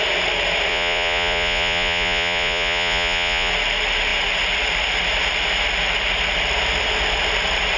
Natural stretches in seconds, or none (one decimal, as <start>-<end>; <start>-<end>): 0.0-0.7; 3.5-7.8